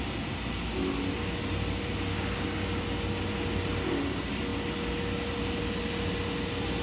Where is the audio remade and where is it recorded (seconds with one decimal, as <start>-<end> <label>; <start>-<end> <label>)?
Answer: 0.0-2.1 recorded; 2.1-2.8 remade; 2.8-6.8 recorded

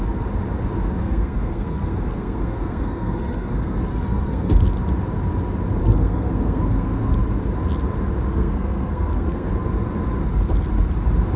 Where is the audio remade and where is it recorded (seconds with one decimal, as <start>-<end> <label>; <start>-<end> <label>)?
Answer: 0.0-1.0 recorded; 1.0-4.5 remade; 4.5-5.8 recorded; 5.8-7.1 remade; 7.1-8.3 recorded; 8.3-9.5 remade; 9.5-11.4 recorded

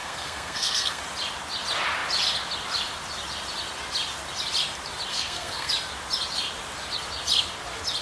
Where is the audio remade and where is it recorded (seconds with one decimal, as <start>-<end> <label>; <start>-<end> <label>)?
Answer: 0.0-1.0 remade; 1.0-5.1 recorded; 5.1-5.7 remade; 5.7-8.0 recorded

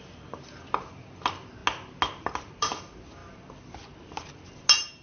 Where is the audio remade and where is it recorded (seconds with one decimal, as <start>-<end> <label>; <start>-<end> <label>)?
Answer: 0.0-5.0 recorded

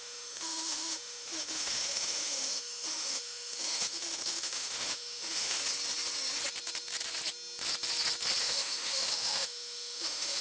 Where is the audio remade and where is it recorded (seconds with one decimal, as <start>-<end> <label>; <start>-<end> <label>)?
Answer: 0.0-5.6 remade; 5.6-8.4 recorded; 8.4-10.4 remade

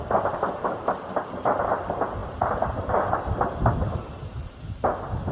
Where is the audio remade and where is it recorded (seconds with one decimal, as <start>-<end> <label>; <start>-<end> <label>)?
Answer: 0.0-5.3 recorded